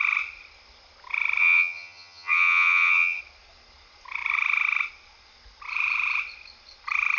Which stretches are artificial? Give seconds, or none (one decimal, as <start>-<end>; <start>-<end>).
1.4-3.2